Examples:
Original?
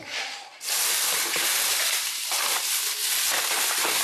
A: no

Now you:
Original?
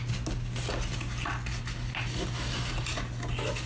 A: yes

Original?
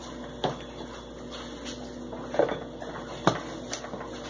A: yes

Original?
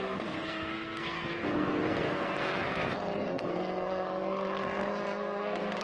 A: no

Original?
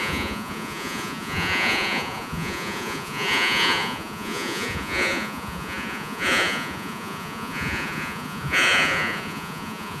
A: no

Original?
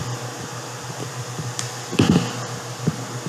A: yes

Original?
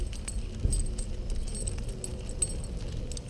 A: yes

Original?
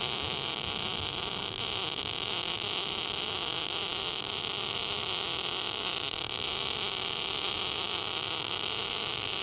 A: yes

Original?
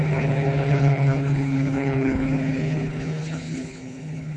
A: no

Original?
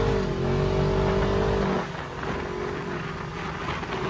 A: yes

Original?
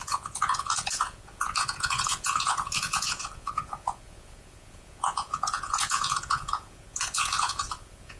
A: no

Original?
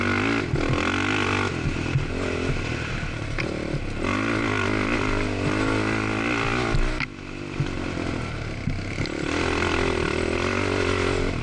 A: yes